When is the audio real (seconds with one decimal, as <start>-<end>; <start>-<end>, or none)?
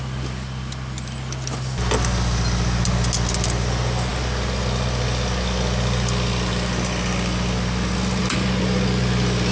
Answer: 0.0-9.5